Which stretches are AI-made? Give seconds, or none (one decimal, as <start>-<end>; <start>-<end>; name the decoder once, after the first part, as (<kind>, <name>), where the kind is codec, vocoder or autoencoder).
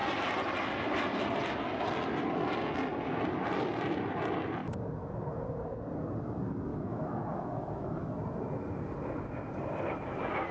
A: 6.7-8.1 (autoencoder, DAC-VAE)